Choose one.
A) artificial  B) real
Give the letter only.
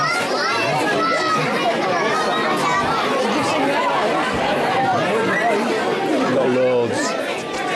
B